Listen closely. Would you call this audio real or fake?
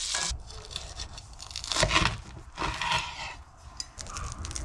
real